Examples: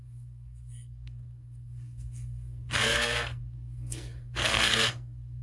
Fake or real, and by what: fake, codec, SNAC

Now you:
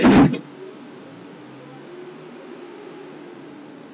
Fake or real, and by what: real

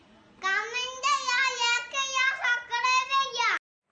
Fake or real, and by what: real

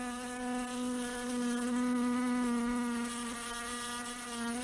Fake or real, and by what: real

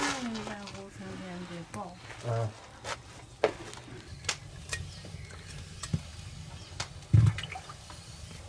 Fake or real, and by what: real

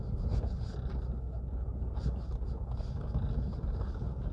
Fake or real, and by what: real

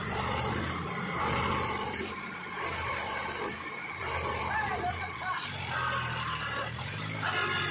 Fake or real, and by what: real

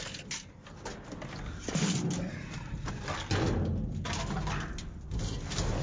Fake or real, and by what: real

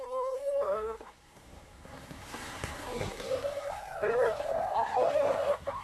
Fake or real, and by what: fake, codec, SNAC